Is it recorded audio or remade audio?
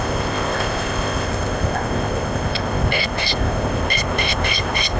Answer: remade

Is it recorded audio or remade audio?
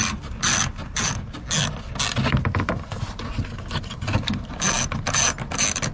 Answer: recorded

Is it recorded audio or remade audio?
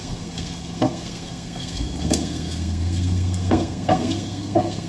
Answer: remade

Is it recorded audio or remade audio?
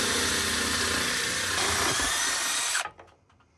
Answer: recorded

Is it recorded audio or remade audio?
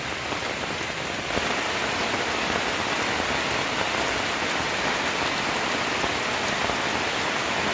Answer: recorded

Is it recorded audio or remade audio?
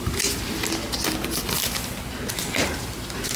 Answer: recorded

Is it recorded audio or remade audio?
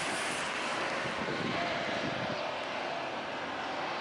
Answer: recorded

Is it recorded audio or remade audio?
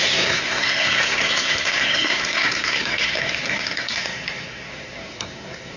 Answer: remade